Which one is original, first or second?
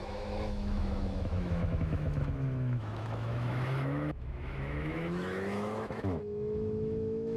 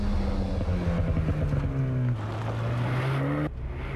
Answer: second